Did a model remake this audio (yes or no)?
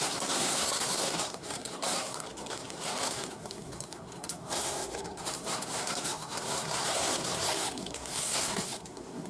yes